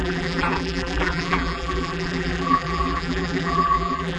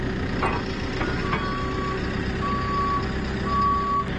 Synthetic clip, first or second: first